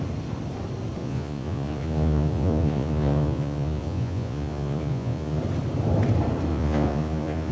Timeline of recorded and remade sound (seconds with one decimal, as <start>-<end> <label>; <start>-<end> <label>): 0.0-1.0 recorded; 1.0-5.4 remade; 5.4-6.5 recorded; 6.5-7.5 remade